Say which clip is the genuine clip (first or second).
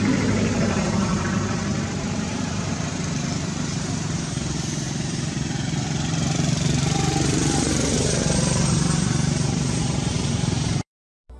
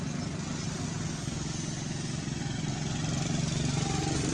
second